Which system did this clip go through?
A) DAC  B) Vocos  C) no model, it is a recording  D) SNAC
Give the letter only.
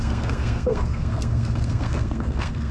D